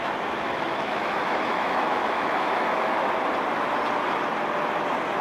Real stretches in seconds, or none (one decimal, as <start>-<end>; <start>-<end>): 3.0-5.2

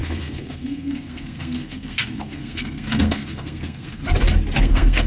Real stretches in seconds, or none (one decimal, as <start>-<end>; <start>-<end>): 4.0-4.6

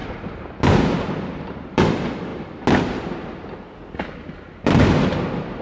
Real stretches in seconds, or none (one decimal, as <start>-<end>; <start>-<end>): 1.8-5.6

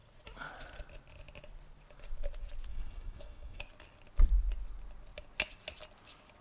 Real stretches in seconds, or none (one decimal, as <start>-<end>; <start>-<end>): 0.0-2.7; 3.6-6.4

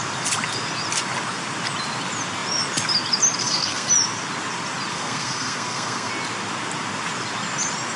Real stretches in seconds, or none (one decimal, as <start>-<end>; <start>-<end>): 0.0-3.4; 3.9-4.9; 6.1-8.0

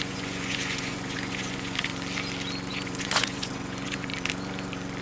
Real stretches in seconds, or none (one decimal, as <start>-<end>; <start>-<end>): 1.9-2.7; 4.1-5.0